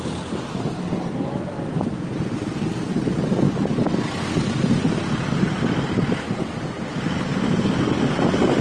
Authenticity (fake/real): real